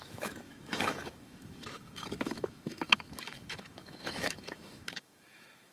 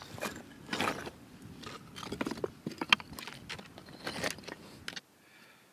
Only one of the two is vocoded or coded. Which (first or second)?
first